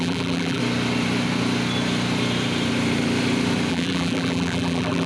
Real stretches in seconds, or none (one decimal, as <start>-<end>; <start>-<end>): 0.6-3.7